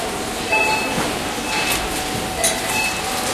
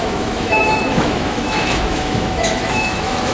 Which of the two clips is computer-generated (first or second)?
second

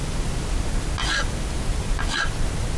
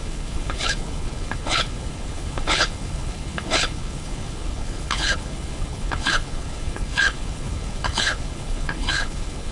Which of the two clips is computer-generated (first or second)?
second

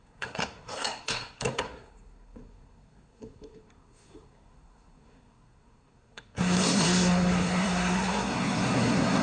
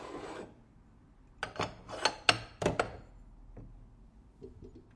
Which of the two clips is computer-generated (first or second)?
first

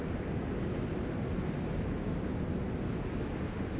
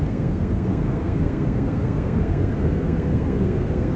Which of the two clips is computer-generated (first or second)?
second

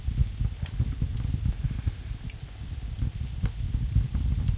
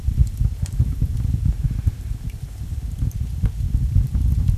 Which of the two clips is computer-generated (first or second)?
second